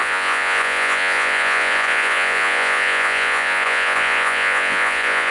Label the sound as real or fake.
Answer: fake